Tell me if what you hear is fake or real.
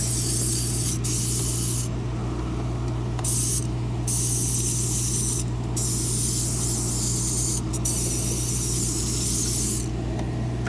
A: real